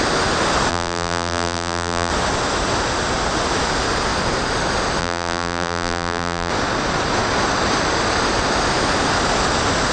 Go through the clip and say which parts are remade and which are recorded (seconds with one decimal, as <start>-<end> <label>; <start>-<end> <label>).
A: 0.0-0.7 recorded; 0.7-2.1 remade; 2.1-5.0 recorded; 5.0-6.5 remade; 6.5-9.9 recorded